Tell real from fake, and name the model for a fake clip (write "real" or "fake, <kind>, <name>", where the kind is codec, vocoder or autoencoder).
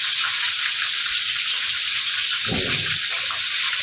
fake, vocoder, BigVGAN v2